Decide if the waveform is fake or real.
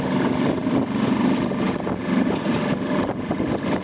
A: real